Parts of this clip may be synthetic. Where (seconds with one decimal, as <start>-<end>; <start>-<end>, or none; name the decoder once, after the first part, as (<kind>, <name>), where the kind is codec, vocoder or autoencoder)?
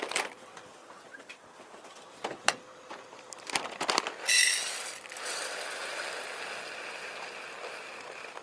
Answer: 0.8-1.4 (vocoder, BigVGAN v2)